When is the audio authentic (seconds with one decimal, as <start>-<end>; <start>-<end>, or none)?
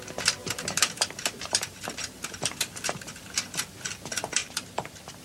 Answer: 0.0-0.4; 3.5-4.4